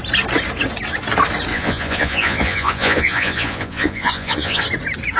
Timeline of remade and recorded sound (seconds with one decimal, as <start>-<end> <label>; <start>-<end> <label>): 0.0-1.5 recorded; 1.5-4.6 remade; 4.6-5.2 recorded